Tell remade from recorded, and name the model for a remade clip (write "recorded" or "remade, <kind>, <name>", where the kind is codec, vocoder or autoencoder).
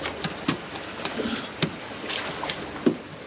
recorded